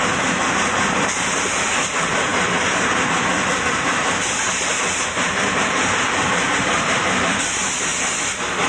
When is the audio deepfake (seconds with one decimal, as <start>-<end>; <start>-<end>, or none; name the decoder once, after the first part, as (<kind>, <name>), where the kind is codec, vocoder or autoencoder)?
0.0-7.9 (vocoder, BigVGAN v2)